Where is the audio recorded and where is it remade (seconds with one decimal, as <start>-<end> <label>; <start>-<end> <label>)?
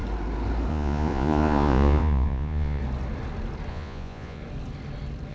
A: 0.0-0.7 recorded; 0.7-2.8 remade; 2.8-3.7 recorded; 3.7-4.4 remade; 4.4-5.3 recorded